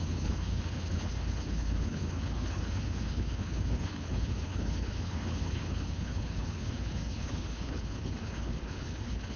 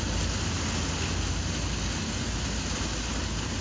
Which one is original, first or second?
second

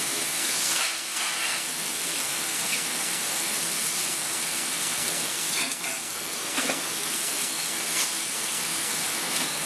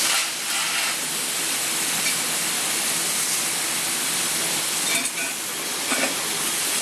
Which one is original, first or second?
second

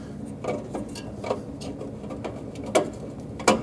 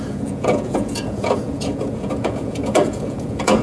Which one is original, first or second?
first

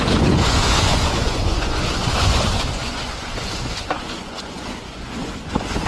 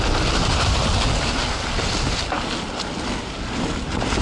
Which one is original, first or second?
second